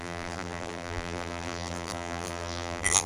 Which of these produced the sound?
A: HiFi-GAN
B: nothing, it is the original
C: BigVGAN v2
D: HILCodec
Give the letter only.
C